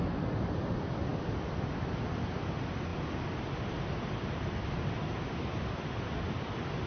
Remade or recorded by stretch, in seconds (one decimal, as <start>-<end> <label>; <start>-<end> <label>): 0.0-6.9 recorded